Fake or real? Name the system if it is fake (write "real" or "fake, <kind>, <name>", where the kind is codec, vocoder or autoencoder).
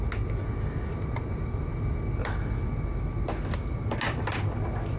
real